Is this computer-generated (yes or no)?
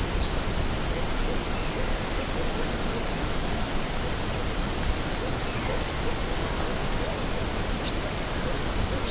no